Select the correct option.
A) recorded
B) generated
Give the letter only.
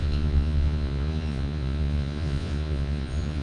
B